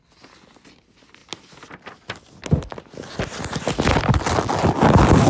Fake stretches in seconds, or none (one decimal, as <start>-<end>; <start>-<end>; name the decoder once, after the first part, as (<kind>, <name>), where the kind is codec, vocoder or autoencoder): none